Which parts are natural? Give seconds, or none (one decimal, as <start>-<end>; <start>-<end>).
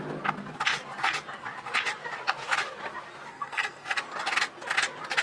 0.0-3.3; 4.0-5.2